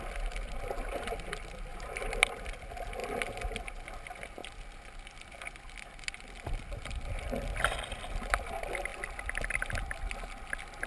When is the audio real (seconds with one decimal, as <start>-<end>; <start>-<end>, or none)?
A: 0.0-1.7; 2.2-10.9